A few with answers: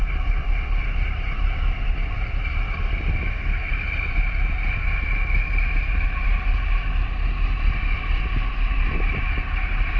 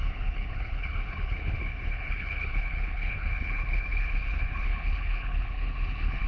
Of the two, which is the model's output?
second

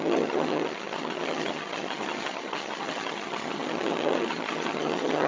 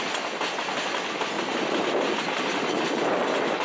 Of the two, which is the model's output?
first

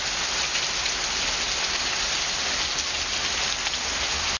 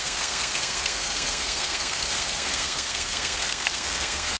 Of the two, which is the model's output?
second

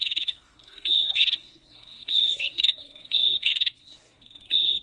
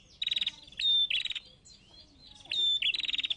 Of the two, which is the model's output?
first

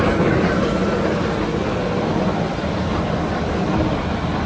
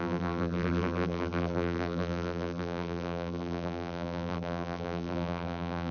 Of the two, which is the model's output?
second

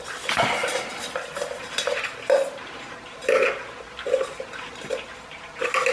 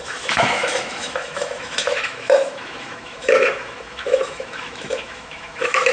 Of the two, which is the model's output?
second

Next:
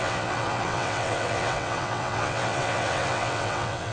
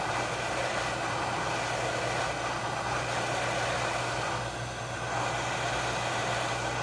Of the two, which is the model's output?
first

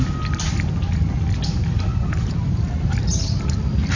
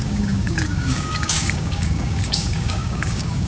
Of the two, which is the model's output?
second